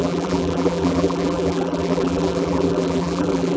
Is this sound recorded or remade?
remade